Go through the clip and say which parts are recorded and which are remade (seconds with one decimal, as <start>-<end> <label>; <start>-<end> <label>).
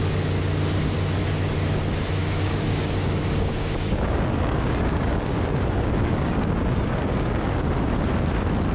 0.0-2.2 recorded; 2.2-7.4 remade; 7.4-8.7 recorded